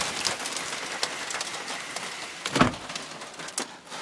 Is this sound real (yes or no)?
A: yes